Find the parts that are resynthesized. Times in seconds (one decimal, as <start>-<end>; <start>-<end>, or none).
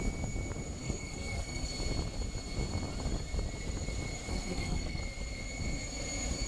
0.8-1.7; 4.3-5.0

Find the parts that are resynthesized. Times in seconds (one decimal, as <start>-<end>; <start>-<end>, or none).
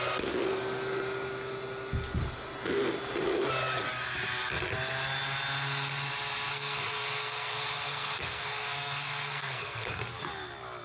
6.5-10.0